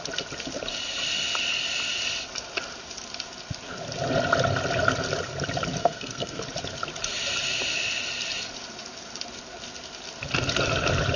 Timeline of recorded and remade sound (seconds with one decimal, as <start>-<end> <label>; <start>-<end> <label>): 0.0-5.8 recorded; 5.8-6.4 remade; 6.4-11.2 recorded